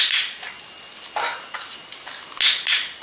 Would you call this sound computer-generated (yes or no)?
no